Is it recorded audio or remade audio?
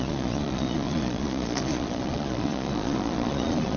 remade